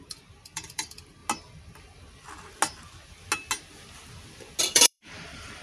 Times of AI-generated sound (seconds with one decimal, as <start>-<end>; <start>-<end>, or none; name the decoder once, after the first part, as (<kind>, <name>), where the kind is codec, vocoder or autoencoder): 0.0-1.2 (vocoder, BigVGAN v2); 4.6-5.6